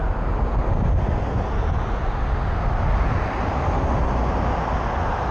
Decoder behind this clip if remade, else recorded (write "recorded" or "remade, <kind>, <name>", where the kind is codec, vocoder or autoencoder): recorded